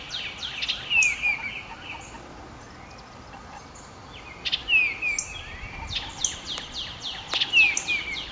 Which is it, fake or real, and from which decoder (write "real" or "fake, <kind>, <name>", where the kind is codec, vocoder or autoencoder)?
real